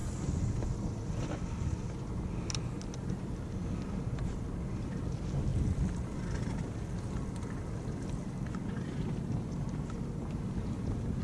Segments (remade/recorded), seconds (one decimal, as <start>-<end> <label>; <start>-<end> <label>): 0.0-11.2 recorded